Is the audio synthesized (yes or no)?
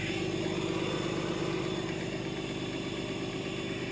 no